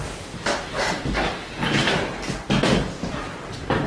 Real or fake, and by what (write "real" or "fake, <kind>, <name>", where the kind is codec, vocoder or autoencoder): real